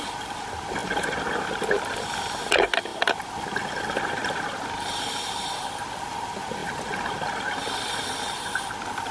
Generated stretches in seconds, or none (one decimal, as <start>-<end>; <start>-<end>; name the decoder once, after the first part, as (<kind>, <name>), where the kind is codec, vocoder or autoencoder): none

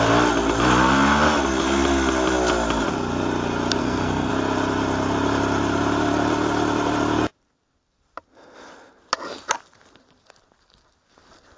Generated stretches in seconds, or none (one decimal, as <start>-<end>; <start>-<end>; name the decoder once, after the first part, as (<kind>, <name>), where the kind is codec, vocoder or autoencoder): 3.8-4.3 (codec, SNAC)

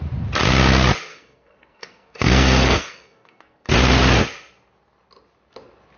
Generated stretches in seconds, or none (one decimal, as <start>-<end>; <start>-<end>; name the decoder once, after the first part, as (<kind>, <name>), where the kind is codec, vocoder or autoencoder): 1.1-3.7 (codec, SNAC)

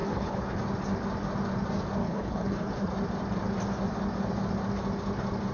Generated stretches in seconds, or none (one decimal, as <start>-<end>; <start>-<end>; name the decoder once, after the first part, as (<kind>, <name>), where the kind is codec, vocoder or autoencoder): 0.0-0.6 (codec, HILCodec); 2.0-2.9

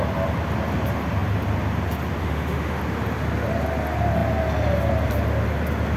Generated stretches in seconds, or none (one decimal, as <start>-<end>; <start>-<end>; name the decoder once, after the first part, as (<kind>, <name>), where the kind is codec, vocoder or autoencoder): 2.2-2.8 (autoencoder, DAC-VAE)

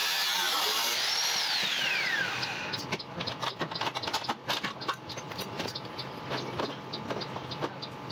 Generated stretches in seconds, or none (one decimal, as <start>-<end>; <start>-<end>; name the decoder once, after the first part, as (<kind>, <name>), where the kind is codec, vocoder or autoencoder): 0.0-2.7 (vocoder, BigVGAN v2)

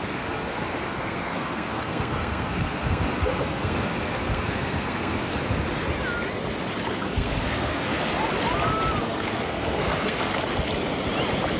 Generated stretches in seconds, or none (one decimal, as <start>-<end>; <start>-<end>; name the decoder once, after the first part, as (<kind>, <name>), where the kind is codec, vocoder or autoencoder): 0.0-5.3 (codec, SNAC); 6.9-8.1; 9.0-10.3